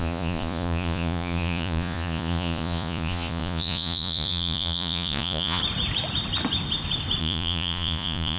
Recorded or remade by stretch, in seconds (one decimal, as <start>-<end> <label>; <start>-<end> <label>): 0.0-5.6 remade; 5.6-7.2 recorded; 7.2-8.4 remade